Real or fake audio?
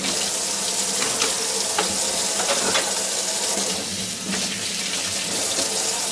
real